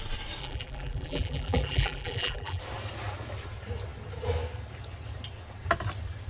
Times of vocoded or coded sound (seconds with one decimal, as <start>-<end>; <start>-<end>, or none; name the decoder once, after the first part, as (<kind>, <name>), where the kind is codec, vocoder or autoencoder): 0.4-2.6 (vocoder, BigVGAN v2)